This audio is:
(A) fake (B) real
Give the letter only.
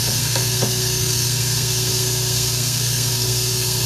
A